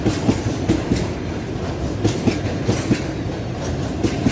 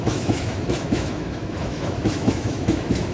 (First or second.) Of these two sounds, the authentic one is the first